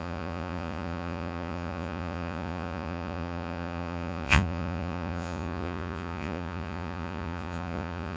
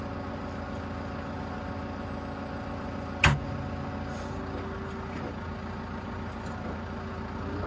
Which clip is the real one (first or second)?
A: second